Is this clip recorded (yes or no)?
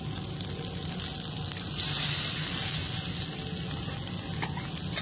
yes